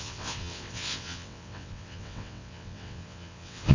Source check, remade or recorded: remade